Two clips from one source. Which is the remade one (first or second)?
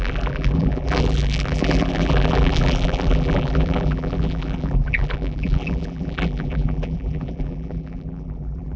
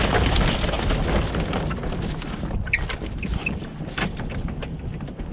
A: first